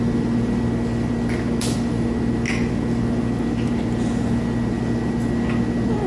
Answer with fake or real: real